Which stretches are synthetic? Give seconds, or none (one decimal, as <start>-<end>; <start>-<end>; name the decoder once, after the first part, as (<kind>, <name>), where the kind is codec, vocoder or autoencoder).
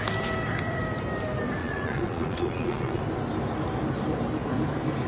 1.6-3.0 (vocoder, Vocos)